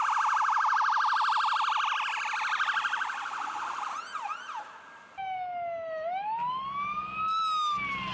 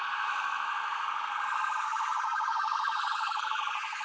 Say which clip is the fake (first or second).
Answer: second